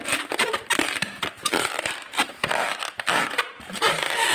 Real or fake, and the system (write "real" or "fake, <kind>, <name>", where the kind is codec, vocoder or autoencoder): fake, vocoder, BigVGAN v2